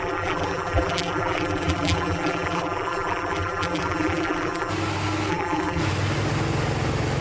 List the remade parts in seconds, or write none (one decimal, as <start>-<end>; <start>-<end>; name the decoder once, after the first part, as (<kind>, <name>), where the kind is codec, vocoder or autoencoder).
0.0-4.7 (vocoder, BigVGAN v2); 5.3-5.8

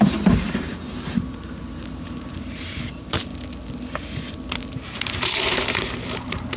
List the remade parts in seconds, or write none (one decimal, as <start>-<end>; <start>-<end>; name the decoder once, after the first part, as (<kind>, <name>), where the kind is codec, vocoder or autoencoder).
0.0-3.3 (vocoder, BigVGAN v2); 4.7-6.6

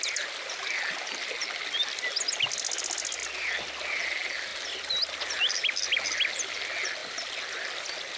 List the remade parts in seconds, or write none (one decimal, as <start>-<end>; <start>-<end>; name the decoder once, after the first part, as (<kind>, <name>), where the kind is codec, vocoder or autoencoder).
none

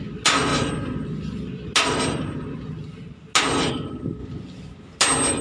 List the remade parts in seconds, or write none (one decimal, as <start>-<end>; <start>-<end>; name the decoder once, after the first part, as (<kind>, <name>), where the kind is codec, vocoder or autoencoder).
none